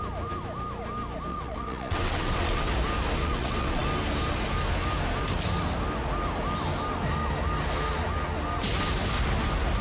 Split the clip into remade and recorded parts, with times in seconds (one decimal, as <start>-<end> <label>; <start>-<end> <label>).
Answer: 0.0-1.3 recorded; 1.3-2.7 remade; 2.7-3.2 recorded; 3.2-3.8 remade; 3.8-9.8 recorded

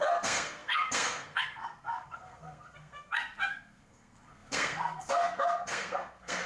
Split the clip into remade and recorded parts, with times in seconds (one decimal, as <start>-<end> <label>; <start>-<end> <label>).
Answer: 0.0-6.5 remade